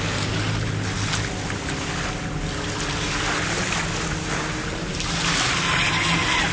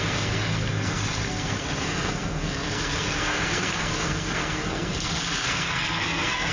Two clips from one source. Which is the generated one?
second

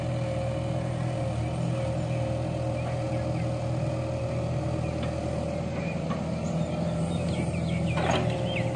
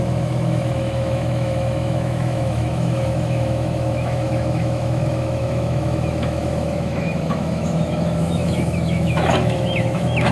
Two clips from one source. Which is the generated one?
second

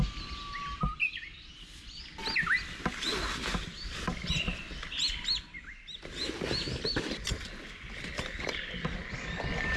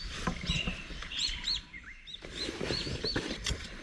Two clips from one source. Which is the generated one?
second